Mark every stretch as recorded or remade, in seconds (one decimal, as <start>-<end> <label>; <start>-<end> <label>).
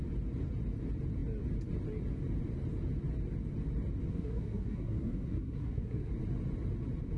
0.0-4.1 recorded; 4.1-6.1 remade; 6.1-7.2 recorded